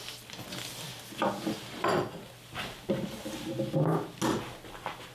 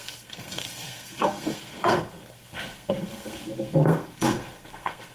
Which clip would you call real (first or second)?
first